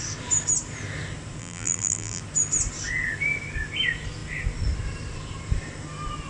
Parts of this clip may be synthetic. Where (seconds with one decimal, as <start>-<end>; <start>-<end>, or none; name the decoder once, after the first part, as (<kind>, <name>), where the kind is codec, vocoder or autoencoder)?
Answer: 1.4-2.2 (vocoder, BigVGAN v2)